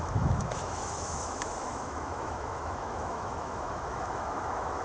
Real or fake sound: fake